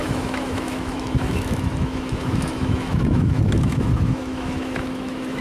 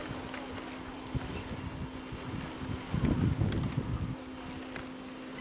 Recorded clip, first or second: second